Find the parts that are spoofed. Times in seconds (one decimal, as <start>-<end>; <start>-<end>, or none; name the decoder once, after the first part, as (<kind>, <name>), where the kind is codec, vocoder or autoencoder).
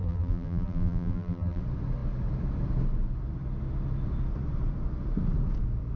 0.0-1.6 (vocoder, BigVGAN v2)